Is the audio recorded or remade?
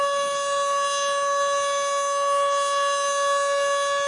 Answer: recorded